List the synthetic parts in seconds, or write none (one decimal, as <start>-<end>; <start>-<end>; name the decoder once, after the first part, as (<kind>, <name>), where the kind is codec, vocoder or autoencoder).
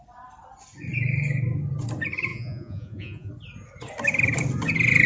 2.3-3.3 (vocoder, Vocos)